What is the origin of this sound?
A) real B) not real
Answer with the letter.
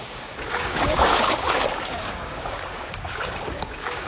B